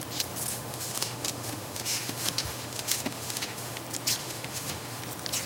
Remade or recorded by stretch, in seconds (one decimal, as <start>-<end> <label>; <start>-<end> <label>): 0.0-0.5 recorded; 0.5-3.8 remade; 3.8-4.2 recorded; 4.2-5.0 remade; 5.0-5.5 recorded